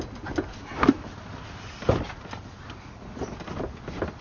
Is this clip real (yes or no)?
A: yes